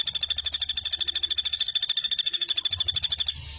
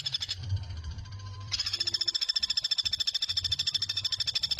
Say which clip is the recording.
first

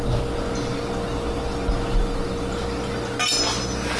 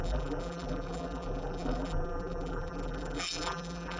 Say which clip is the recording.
first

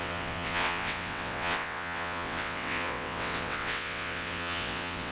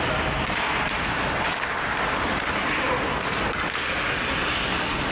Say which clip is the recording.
second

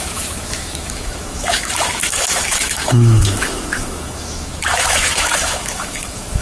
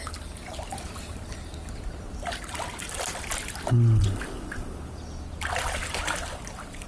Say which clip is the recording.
second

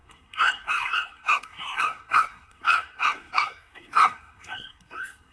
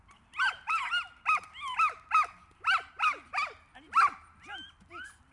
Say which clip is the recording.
second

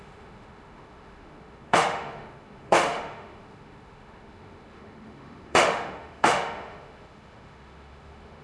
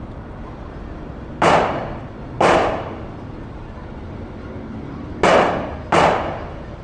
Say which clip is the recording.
second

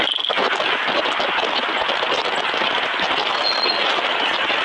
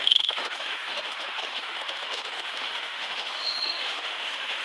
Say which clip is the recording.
first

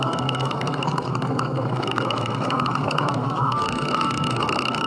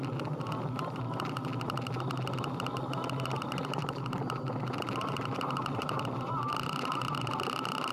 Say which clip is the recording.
second